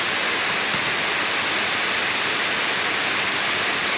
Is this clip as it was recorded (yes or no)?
yes